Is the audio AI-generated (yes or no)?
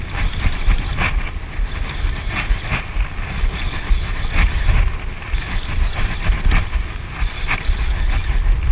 no